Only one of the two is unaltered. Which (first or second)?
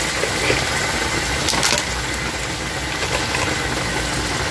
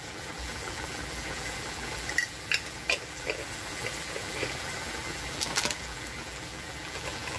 first